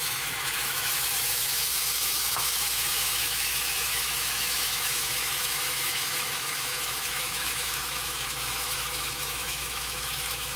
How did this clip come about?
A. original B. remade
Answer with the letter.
B